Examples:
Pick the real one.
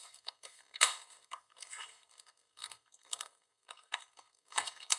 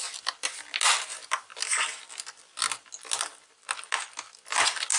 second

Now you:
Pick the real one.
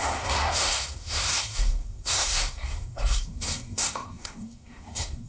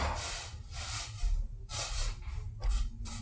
second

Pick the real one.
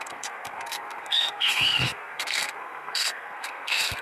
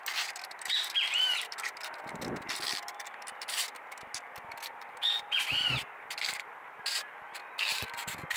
second